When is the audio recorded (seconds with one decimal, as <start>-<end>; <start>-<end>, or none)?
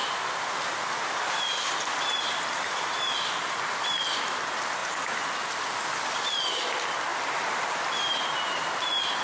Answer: 4.2-7.1; 8.2-9.2